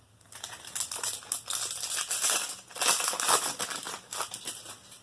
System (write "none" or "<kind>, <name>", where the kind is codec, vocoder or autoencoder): none